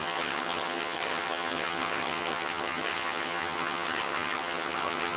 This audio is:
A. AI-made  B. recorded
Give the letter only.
A